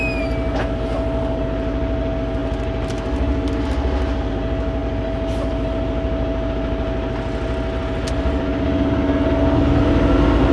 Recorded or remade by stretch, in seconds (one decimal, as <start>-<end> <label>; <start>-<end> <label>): 0.0-10.5 recorded